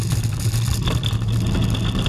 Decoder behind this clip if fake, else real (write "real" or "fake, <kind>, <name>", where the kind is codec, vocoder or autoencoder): real